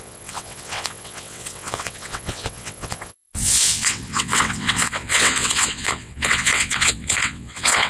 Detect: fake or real fake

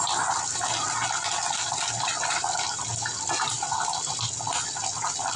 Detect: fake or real real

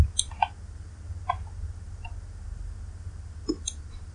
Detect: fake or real real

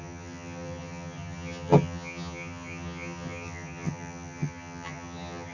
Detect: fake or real fake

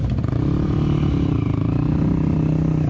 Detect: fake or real real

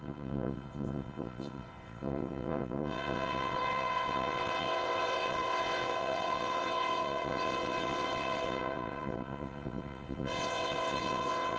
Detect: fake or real fake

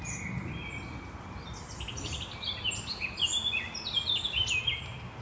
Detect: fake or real real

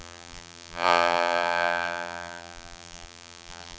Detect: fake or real fake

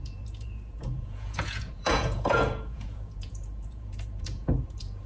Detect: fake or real fake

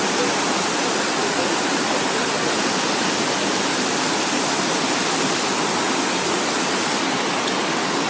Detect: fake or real real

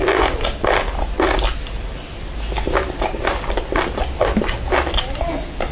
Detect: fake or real real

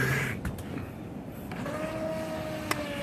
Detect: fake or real real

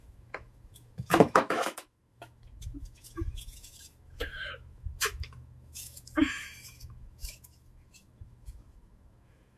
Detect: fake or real fake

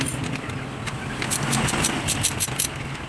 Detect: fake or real real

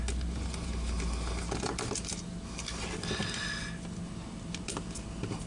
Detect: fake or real real